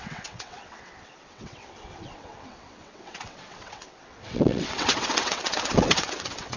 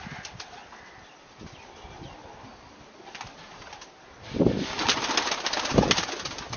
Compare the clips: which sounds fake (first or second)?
first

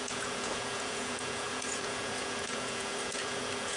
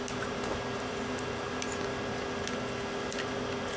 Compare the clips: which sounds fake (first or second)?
first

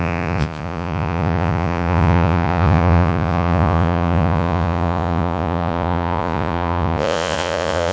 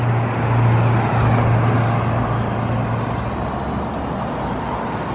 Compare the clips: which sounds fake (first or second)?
first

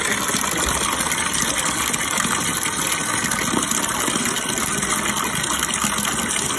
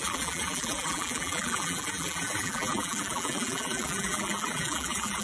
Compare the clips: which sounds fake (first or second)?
second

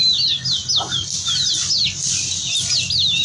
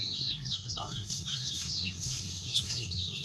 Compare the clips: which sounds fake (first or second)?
second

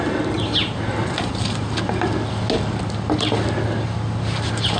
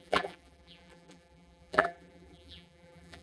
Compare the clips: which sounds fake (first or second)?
second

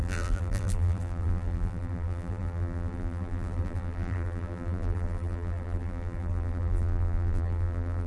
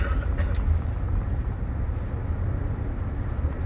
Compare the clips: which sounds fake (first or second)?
first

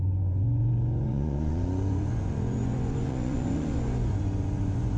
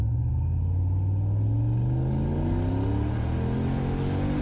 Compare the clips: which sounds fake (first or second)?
first